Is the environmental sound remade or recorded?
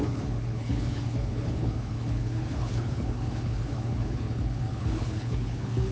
remade